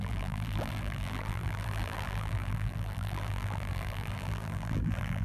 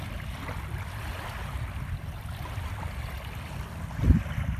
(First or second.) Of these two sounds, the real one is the second